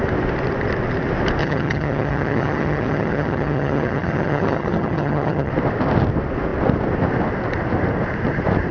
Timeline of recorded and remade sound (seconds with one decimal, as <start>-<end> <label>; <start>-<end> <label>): 0.0-1.4 recorded; 1.4-5.5 remade; 5.5-8.7 recorded